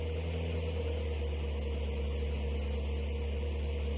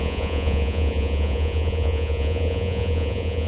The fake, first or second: second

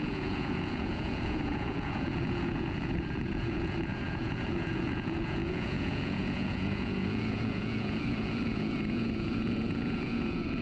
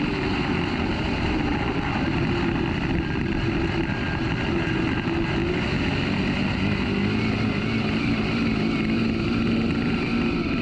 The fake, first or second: first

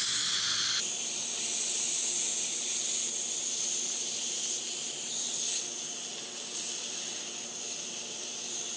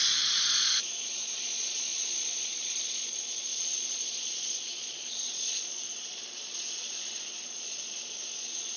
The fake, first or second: second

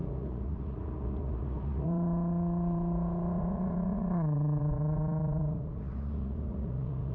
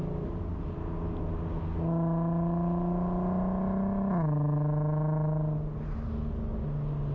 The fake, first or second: first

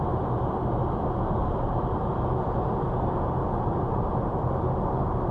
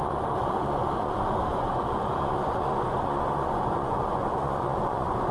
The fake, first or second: second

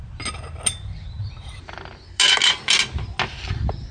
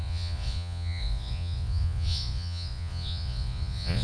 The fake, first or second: second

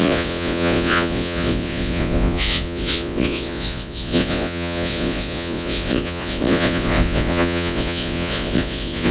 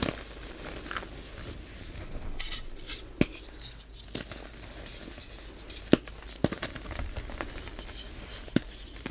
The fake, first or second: first